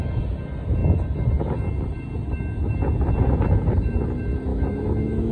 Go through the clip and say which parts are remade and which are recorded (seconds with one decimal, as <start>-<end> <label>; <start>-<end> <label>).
0.0-4.5 recorded; 4.5-5.3 remade